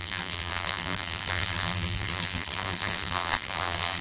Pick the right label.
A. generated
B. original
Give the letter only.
A